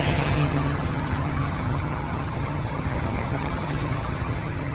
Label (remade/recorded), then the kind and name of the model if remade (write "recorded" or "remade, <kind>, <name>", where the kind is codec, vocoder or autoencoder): remade, vocoder, HiFi-GAN